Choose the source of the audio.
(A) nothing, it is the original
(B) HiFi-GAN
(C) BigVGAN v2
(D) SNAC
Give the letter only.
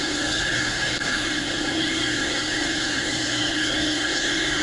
D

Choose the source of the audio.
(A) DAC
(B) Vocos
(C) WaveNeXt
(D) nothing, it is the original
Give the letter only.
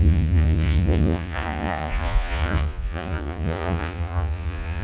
B